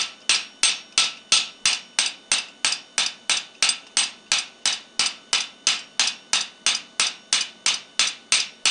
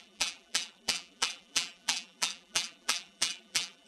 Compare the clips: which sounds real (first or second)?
first